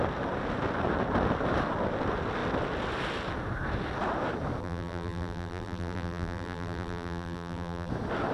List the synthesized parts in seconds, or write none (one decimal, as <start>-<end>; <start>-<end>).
4.6-7.9